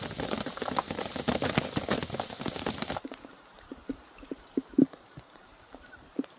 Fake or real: fake